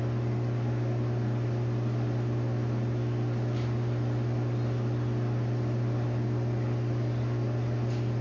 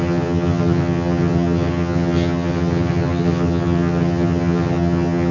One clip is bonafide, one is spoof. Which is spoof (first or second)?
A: second